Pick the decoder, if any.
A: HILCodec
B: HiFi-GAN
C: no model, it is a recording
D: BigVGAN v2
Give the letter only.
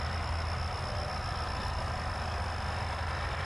C